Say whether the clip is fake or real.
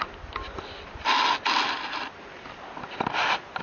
real